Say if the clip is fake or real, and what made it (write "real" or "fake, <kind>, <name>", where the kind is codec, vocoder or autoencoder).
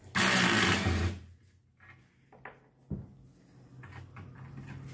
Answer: real